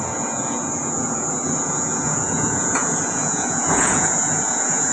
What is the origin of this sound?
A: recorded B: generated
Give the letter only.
B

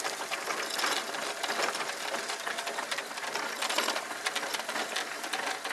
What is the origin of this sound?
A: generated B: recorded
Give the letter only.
B